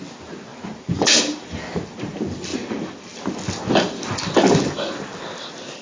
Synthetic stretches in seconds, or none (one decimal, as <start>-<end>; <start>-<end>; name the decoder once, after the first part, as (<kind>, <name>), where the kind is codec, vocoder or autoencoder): none